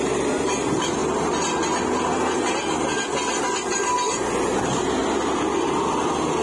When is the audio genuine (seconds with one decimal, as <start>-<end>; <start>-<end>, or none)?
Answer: 0.0-6.4